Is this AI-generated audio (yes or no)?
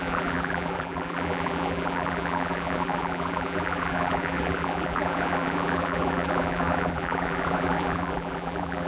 yes